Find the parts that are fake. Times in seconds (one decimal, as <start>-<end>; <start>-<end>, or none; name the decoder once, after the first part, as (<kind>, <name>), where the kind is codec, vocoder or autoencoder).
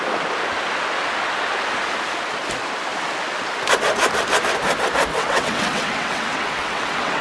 5.1-7.2 (vocoder, WaveNeXt)